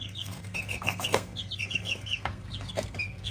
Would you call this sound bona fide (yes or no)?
no